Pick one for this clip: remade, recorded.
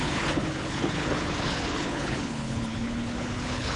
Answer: remade